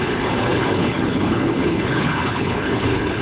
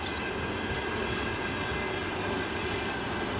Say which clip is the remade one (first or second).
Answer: first